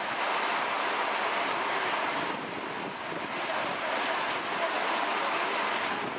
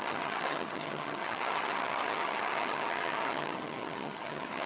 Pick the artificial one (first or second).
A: second